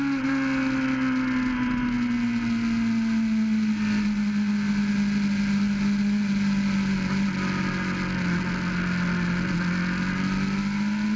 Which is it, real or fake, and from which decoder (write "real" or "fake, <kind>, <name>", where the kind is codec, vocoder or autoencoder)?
real